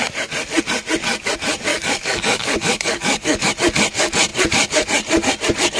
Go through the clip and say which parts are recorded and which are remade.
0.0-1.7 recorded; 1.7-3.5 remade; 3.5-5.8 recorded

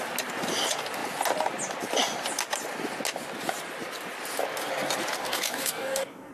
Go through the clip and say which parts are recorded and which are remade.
0.0-5.2 recorded; 5.2-6.3 remade